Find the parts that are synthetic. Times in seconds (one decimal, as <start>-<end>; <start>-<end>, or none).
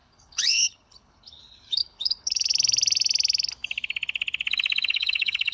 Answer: 0.0-2.5; 4.9-5.5